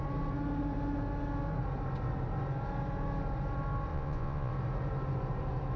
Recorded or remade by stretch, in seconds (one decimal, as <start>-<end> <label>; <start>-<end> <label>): 0.0-3.9 recorded; 3.9-4.5 remade; 4.5-5.8 recorded